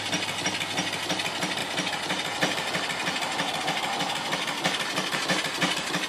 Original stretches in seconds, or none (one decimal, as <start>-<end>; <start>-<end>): 0.0-6.1